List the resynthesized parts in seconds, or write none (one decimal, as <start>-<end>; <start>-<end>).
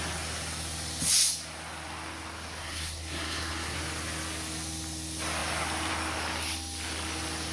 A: 2.6-3.8